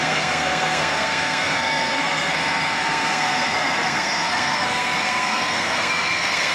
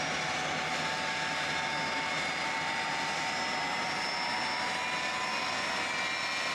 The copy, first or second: first